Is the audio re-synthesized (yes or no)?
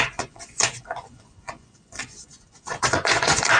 yes